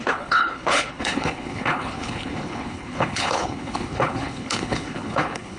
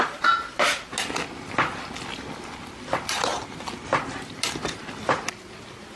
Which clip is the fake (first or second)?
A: first